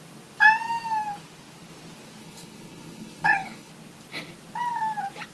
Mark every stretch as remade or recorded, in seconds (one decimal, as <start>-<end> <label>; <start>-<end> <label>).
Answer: 0.0-2.2 recorded; 2.2-3.7 remade; 3.7-5.3 recorded